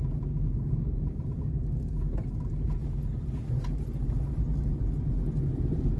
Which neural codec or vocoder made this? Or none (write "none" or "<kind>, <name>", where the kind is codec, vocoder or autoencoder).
none